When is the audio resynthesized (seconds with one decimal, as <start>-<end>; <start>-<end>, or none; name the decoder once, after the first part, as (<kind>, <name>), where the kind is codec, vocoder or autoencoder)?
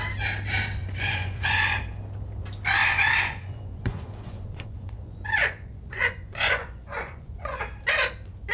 0.8-1.8 (vocoder, Vocos); 2.8-7.6